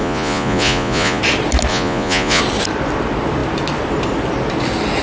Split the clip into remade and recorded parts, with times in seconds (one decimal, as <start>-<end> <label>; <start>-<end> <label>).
0.0-1.2 remade; 1.2-1.7 recorded; 1.7-2.4 remade; 2.4-5.0 recorded